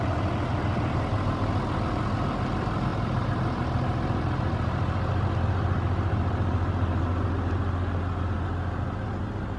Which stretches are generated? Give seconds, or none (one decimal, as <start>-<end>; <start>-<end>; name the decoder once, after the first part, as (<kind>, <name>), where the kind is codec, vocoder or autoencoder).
none